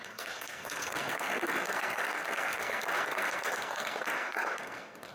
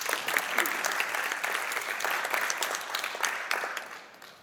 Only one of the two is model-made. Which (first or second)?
first